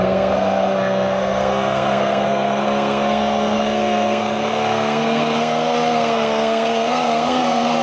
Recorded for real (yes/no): no